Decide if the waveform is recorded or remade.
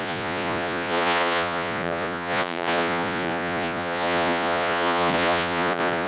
remade